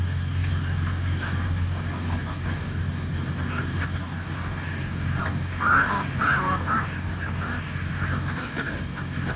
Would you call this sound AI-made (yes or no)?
yes